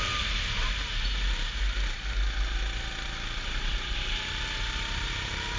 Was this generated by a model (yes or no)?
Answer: no